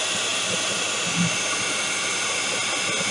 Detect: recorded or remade recorded